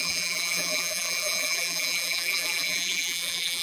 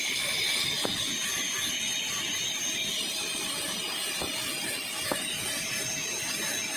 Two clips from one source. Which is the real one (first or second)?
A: second